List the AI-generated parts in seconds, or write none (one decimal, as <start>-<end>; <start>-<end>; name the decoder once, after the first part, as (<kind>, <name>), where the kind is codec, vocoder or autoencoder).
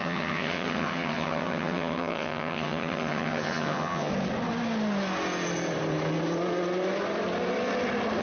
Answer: 0.0-4.1 (vocoder, HiFi-GAN)